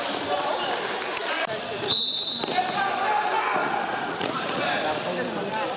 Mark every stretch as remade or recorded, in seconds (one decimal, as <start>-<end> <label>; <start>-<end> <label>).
0.0-3.6 recorded; 3.6-4.6 remade; 4.6-5.8 recorded